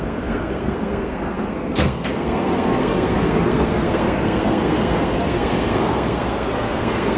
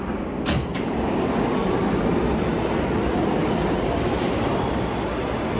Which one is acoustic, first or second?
second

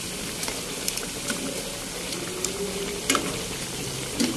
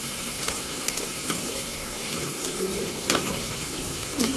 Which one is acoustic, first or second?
first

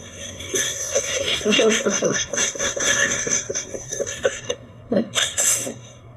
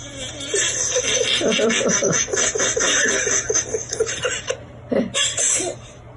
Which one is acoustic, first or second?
second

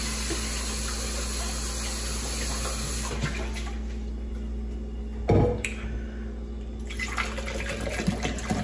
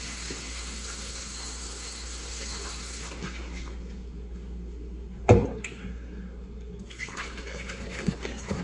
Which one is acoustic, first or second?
first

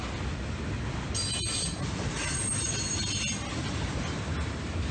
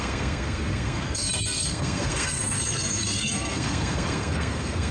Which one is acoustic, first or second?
first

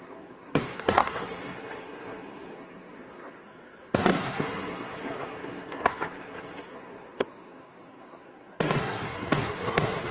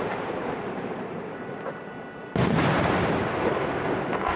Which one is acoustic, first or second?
second